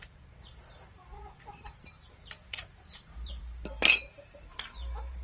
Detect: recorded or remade remade